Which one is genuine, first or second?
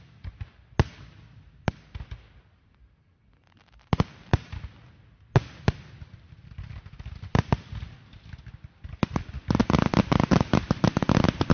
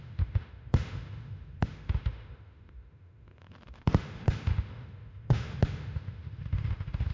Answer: first